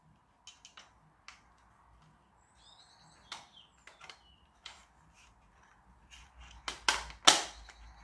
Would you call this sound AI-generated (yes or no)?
no